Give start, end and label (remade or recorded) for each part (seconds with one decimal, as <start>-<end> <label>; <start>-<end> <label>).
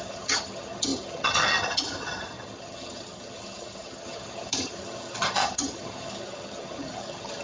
0.0-7.4 remade